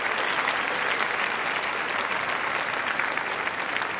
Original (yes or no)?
yes